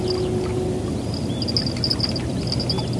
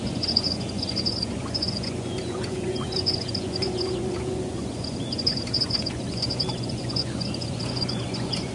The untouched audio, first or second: first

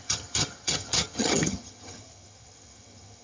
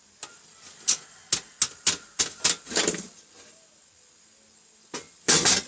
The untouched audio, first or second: second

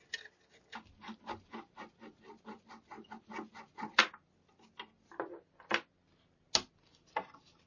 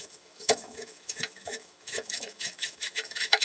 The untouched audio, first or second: first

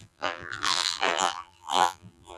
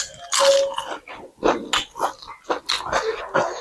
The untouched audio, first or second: second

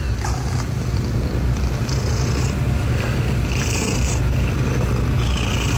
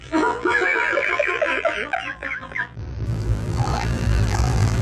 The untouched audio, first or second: first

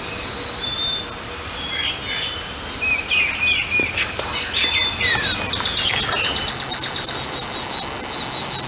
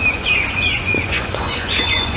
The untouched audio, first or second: first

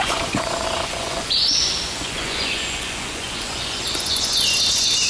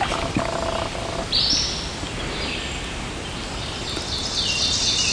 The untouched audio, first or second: second